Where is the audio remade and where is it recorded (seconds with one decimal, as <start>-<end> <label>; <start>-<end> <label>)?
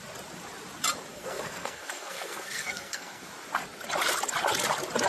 0.0-1.1 recorded; 1.1-3.3 remade; 3.3-5.1 recorded